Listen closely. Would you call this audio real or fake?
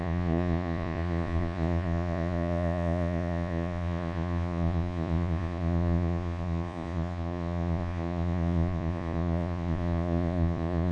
fake